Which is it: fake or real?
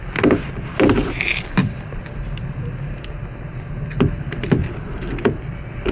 real